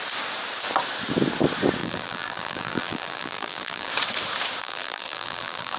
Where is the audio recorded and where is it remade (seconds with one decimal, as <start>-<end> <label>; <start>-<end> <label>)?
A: 0.0-1.8 recorded; 1.8-3.9 remade; 3.9-4.6 recorded; 4.6-5.8 remade